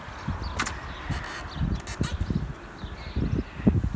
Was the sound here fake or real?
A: real